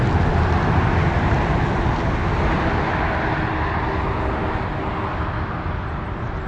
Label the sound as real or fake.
real